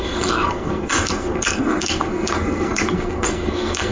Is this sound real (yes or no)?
no